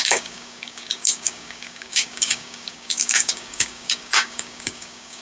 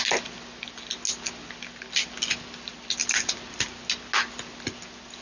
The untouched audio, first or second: second